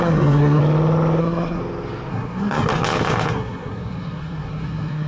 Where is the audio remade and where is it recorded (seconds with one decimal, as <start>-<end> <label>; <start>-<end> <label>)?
0.0-0.6 remade; 0.6-1.2 recorded; 1.2-1.6 remade; 1.6-2.1 recorded; 2.1-2.7 remade; 2.7-3.3 recorded; 3.3-5.1 remade